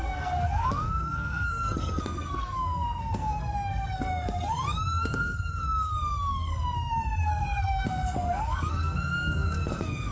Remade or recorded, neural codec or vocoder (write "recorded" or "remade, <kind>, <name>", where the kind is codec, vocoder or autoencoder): remade, codec, SNAC